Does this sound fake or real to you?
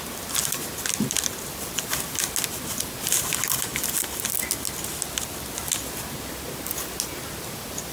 real